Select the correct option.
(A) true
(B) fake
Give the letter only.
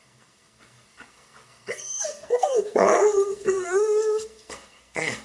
B